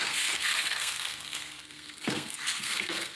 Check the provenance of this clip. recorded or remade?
remade